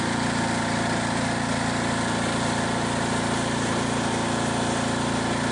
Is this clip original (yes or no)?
yes